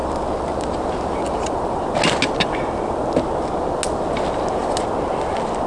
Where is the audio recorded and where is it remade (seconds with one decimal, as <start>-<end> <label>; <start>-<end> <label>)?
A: 0.0-5.7 recorded